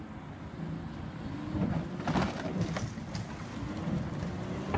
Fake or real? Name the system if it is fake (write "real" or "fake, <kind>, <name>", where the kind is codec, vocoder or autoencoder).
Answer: real